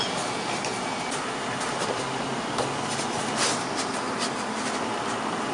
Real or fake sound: real